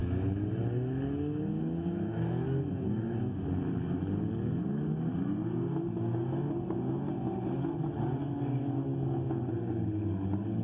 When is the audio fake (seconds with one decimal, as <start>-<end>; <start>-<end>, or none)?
0.0-3.4; 8.2-9.4